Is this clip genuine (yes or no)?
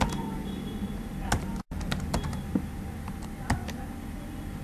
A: yes